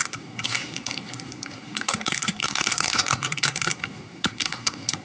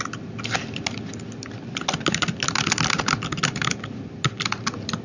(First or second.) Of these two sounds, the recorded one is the second